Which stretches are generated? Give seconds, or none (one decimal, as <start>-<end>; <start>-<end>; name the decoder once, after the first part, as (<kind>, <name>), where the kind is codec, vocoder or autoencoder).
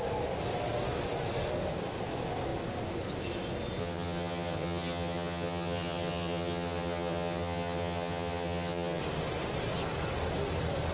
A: 3.8-9.0 (vocoder, HiFi-GAN)